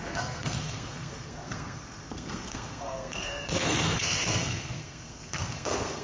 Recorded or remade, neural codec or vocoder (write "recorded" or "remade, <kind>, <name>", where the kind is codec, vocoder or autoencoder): remade, codec, SNAC